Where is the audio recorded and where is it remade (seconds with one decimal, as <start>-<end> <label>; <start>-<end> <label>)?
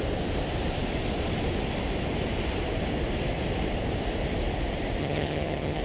0.0-5.0 recorded; 5.0-5.8 remade